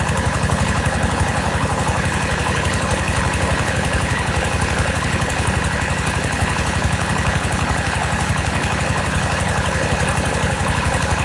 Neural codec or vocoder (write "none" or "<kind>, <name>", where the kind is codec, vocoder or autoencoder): codec, HILCodec